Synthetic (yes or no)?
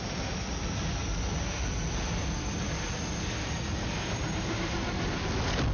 no